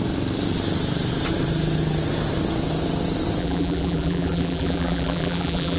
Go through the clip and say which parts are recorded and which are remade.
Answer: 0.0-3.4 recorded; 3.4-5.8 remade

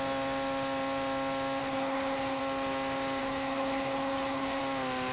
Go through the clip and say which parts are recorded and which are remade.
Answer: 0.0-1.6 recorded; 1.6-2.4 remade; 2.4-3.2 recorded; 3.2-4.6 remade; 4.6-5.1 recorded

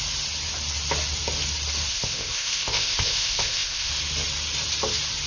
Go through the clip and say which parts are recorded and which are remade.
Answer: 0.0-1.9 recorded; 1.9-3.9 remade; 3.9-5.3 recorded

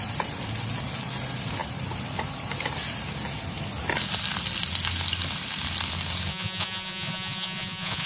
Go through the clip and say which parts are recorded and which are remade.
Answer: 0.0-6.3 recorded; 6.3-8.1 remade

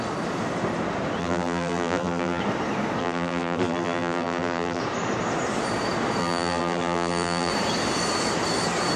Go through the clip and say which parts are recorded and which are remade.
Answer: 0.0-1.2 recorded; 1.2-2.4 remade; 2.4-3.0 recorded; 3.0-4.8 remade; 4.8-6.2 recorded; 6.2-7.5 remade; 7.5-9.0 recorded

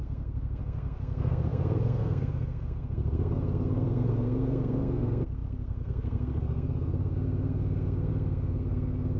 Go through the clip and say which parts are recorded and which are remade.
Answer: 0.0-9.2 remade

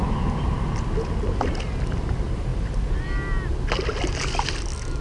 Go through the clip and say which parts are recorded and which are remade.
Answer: 0.0-5.0 recorded

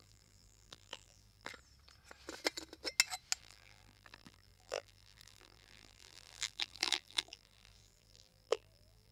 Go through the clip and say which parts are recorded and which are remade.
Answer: 0.0-1.5 remade; 1.5-3.4 recorded; 3.4-9.1 remade